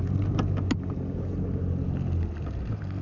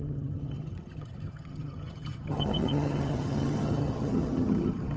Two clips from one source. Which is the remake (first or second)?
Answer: second